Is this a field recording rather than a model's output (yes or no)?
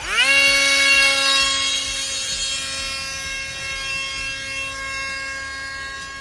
yes